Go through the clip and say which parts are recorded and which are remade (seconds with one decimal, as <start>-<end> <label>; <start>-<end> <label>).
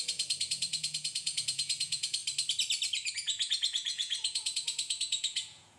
0.0-2.2 remade; 2.2-3.1 recorded; 3.1-5.8 remade